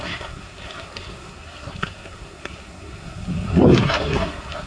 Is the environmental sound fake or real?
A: fake